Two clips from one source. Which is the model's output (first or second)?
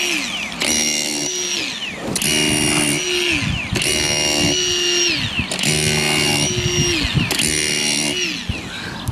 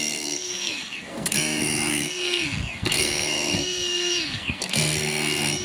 second